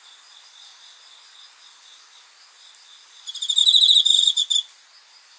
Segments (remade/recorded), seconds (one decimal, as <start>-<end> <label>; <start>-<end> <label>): 0.0-5.4 recorded